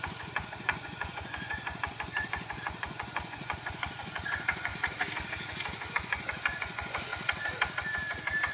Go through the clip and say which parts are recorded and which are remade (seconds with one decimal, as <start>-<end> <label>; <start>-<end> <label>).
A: 0.0-4.7 remade; 4.7-5.9 recorded; 5.9-7.1 remade; 7.1-8.5 recorded